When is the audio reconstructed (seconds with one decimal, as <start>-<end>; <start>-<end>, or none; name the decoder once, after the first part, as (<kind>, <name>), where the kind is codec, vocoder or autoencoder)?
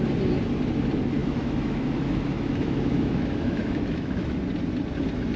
1.2-4.4 (autoencoder, DAC-VAE)